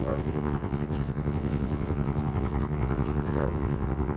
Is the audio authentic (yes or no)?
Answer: no